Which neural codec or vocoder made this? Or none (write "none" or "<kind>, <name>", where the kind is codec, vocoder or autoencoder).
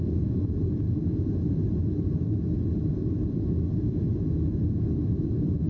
none